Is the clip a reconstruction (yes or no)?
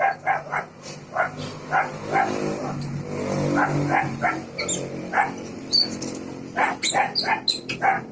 no